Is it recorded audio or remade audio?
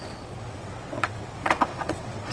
remade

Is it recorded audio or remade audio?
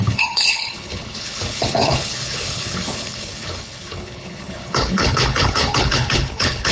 remade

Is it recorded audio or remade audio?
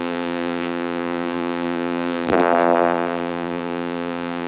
remade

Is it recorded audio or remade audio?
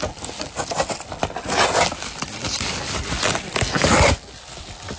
recorded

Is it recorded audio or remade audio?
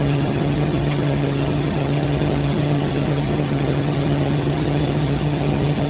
remade